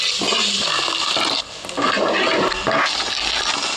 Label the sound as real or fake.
real